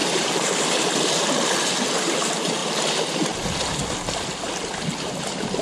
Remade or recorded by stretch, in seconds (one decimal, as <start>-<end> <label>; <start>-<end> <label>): 0.0-0.5 remade; 0.5-5.6 recorded